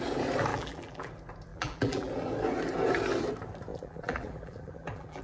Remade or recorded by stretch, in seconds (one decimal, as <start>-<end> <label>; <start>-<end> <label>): 0.0-0.5 recorded; 0.5-1.1 remade; 1.1-1.5 recorded; 1.5-2.1 remade; 2.1-3.7 recorded; 3.7-5.2 remade